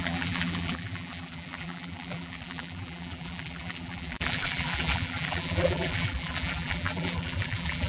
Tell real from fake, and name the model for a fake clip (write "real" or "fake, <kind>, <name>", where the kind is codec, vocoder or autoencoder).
fake, vocoder, BigVGAN v2